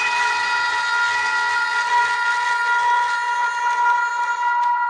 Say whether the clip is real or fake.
real